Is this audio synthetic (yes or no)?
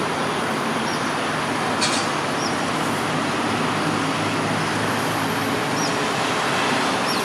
no